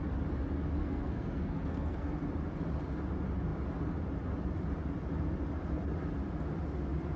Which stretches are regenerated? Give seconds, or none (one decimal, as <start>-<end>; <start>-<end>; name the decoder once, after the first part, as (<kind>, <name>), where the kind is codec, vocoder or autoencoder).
0.8-2.1 (codec, SNAC)